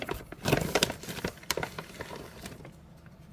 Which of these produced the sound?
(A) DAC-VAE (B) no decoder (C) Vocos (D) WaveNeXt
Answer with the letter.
B